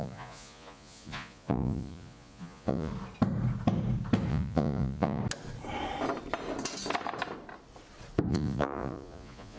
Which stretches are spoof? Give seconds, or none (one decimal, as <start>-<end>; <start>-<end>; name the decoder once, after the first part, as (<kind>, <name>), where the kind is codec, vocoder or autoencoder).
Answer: 0.0-2.9 (vocoder, Vocos); 4.3-5.2; 8.3-9.6